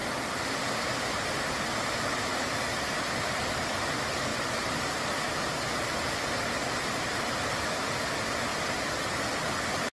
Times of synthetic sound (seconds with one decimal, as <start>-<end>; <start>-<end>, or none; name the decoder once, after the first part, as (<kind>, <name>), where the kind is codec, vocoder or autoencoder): none